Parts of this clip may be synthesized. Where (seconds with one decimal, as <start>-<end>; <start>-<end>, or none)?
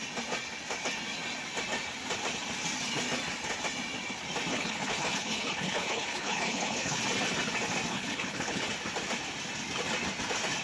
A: 4.5-7.0; 7.9-8.7